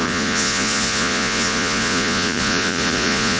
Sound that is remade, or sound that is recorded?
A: remade